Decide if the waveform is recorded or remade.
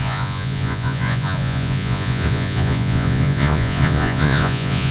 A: remade